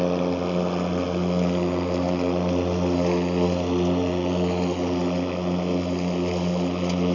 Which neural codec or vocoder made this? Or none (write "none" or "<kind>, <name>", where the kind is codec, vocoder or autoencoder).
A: none